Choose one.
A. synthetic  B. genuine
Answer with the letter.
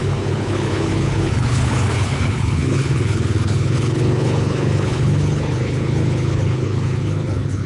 A